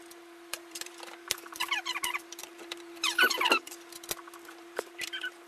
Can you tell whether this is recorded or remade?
remade